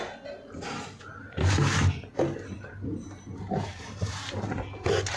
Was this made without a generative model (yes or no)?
yes